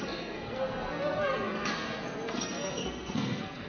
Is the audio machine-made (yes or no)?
yes